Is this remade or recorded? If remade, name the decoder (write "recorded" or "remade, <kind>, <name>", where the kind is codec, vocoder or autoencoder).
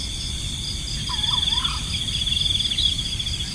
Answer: recorded